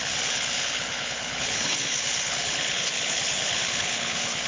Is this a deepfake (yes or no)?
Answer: yes